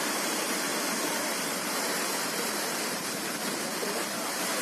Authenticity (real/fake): fake